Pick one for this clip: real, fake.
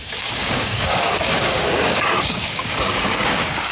fake